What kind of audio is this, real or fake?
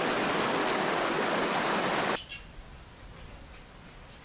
real